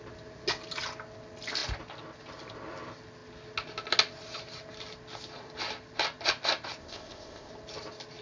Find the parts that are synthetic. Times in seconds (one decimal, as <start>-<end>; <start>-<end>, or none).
6.8-7.5